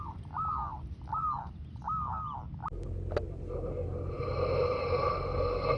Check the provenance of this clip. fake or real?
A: real